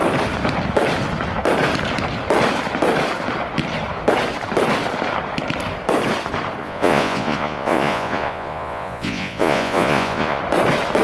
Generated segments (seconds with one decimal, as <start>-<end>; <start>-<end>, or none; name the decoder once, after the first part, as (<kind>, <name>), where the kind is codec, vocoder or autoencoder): 6.6-10.4 (vocoder, Vocos)